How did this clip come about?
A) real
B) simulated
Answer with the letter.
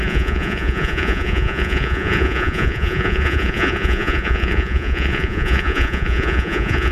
B